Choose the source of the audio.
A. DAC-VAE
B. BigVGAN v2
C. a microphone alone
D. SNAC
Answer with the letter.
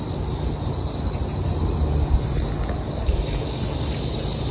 C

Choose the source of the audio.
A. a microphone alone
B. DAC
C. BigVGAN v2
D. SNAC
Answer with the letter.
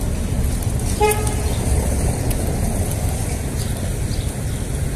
A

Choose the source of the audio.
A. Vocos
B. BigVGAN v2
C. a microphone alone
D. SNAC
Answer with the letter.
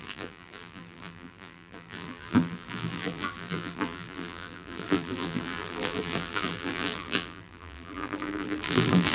B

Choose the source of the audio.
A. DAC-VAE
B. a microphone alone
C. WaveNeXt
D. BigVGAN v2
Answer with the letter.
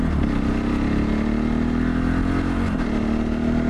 B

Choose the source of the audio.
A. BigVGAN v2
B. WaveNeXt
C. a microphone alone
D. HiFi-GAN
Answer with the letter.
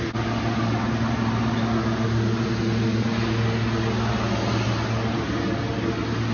C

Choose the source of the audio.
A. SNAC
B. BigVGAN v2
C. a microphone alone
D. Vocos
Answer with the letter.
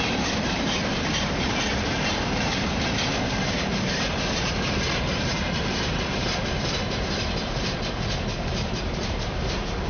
B